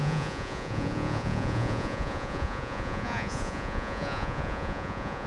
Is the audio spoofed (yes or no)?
yes